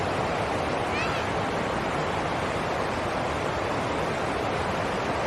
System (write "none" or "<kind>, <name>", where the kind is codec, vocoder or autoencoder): none